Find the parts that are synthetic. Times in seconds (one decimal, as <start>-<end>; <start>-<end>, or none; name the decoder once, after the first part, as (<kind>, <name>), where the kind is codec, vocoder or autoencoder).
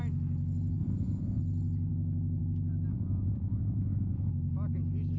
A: 0.8-1.4 (vocoder, Vocos); 2.9-4.3